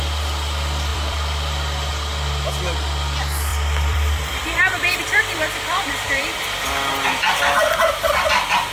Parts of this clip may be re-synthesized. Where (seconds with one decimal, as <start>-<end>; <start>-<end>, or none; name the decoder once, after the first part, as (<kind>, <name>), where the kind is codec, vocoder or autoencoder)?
0.9-1.9 (vocoder, BigVGAN v2); 3.5-6.6